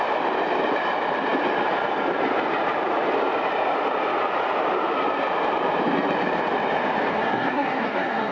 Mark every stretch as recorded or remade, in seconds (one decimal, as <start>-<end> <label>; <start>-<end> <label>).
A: 0.0-7.1 recorded; 7.1-8.3 remade